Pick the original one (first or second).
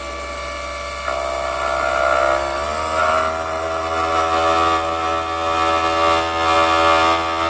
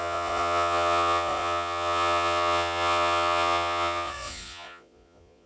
first